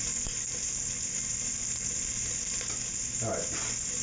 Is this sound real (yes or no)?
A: yes